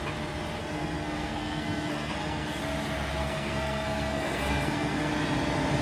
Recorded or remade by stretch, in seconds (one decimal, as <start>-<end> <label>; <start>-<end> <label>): 0.0-0.6 recorded; 0.6-2.6 remade; 2.6-3.2 recorded; 3.2-5.1 remade; 5.1-5.8 recorded